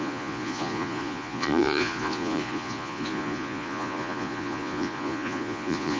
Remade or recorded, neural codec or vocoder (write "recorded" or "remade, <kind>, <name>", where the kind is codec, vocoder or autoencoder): remade, vocoder, Vocos